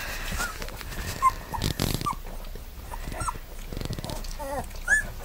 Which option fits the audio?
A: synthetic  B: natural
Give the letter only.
B